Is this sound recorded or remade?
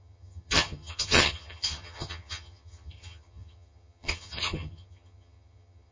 remade